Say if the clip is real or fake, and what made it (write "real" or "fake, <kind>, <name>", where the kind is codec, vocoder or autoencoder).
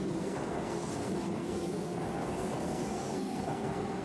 fake, codec, SNAC